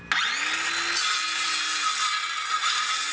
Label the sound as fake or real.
real